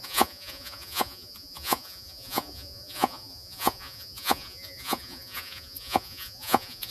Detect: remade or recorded remade